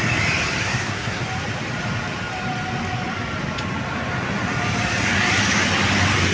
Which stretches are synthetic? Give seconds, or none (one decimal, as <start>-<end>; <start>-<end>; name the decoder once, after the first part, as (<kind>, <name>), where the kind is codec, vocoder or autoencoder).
0.6-1.2 (codec, SNAC)